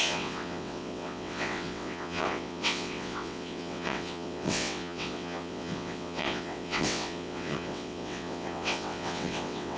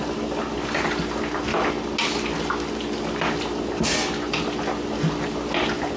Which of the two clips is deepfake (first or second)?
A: first